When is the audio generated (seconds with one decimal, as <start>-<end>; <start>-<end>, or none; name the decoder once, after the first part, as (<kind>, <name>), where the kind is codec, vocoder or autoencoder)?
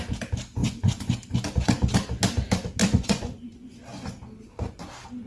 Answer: 0.6-1.1 (vocoder, Vocos); 2.8-3.8